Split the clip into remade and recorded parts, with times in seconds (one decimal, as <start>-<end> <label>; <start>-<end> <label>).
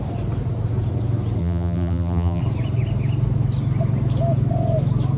0.0-1.4 recorded; 1.4-2.4 remade; 2.4-5.2 recorded